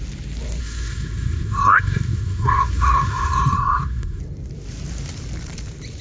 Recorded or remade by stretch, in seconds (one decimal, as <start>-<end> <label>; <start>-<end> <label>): 0.0-0.6 recorded; 0.6-4.2 remade; 4.2-6.0 recorded